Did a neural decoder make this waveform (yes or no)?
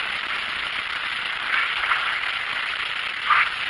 yes